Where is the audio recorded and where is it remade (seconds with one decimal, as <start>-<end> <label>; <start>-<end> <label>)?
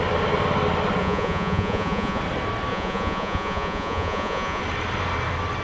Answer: 0.0-1.0 recorded; 1.0-2.2 remade; 2.2-2.7 recorded; 2.7-4.6 remade; 4.6-5.6 recorded